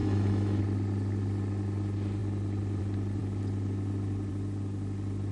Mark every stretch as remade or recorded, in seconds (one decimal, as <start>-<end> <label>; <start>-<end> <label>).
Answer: 0.0-0.6 remade; 0.6-5.3 recorded